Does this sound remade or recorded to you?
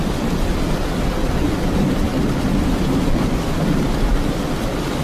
recorded